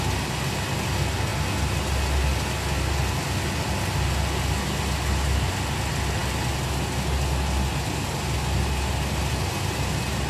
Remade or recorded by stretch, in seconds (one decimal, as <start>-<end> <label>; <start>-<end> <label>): 0.0-10.3 recorded